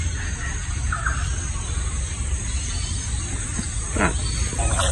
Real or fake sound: real